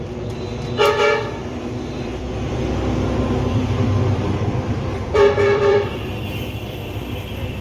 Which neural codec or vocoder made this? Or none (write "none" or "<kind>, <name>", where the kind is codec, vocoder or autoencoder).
vocoder, BigVGAN v2